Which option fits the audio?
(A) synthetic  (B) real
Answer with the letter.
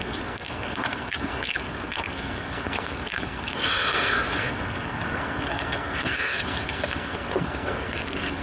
A